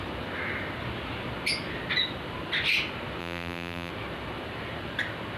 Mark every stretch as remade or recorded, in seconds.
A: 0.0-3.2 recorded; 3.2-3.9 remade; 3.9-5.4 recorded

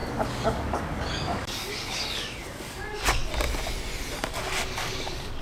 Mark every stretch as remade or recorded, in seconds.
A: 0.0-3.2 remade; 3.2-4.2 recorded; 4.2-5.4 remade

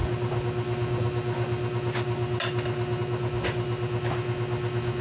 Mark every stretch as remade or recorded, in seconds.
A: 0.0-5.0 recorded

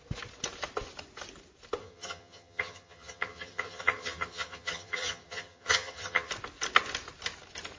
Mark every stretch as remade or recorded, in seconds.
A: 0.0-1.8 recorded; 1.8-6.3 remade; 6.3-7.8 recorded

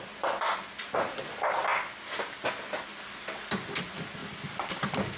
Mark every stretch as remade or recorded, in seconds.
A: 0.0-4.2 recorded; 4.2-5.2 remade

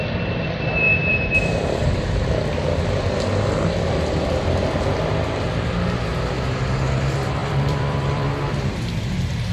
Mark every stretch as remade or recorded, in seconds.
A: 0.0-0.9 recorded; 0.9-1.9 remade; 1.9-7.4 recorded; 7.4-8.8 remade; 8.8-9.5 recorded

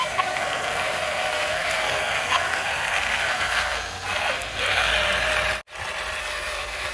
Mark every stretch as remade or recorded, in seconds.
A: 0.0-4.9 remade; 4.9-6.2 recorded; 6.2-6.9 remade

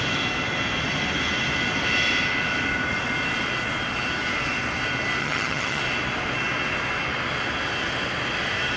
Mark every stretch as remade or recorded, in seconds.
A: 0.0-5.2 recorded; 5.2-5.8 remade; 5.8-8.8 recorded